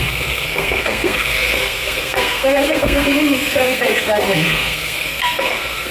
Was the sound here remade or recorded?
remade